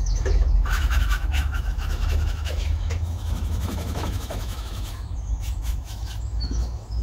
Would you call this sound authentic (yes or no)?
no